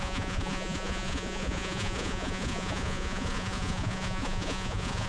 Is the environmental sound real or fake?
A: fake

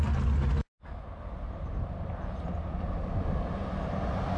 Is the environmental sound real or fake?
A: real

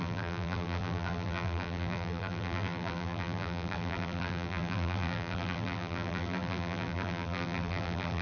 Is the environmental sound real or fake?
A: fake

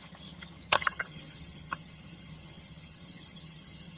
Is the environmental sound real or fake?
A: fake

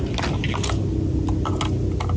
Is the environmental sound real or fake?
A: real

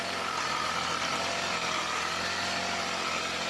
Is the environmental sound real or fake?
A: real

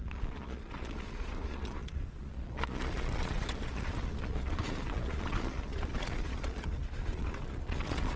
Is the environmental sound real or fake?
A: fake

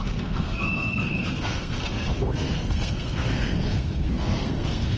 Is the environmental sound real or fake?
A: fake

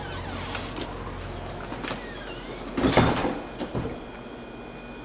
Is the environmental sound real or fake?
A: real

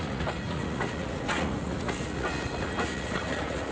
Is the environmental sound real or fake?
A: fake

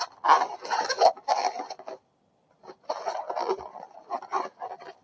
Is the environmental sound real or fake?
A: real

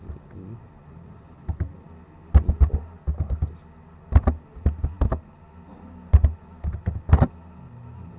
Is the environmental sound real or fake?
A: real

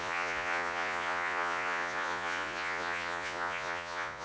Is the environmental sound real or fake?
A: fake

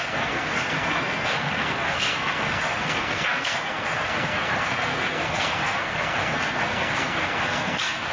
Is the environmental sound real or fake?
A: fake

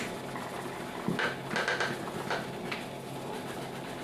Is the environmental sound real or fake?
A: real